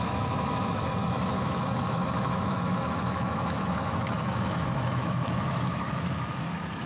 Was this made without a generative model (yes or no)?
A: no